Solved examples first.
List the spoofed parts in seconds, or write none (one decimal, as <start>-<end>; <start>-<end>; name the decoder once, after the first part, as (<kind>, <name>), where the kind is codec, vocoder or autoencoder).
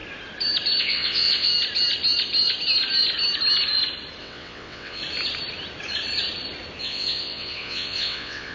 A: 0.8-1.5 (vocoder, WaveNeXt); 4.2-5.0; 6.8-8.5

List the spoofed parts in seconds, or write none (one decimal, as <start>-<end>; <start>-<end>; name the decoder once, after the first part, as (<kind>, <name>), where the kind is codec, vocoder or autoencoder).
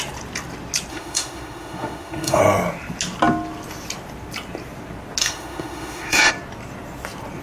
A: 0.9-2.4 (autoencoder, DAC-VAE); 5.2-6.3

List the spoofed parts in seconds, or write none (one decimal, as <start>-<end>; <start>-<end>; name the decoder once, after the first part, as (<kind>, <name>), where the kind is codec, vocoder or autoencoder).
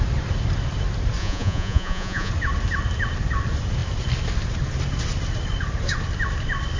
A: 1.2-2.3 (vocoder, Vocos)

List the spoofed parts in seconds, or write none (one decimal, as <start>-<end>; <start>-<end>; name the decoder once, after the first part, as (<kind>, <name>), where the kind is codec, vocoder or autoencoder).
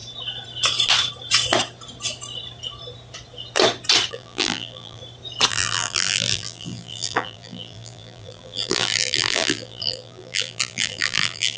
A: 4.1-5.0 (vocoder, BigVGAN v2); 5.5-11.6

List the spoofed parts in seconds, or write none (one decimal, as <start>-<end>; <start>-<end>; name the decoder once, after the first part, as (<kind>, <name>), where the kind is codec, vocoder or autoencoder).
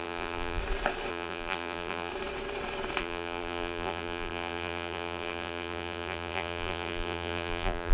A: 0.0-0.6 (vocoder, BigVGAN v2); 1.1-2.1; 3.0-7.9